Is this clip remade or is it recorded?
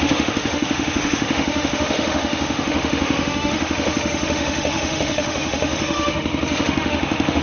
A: remade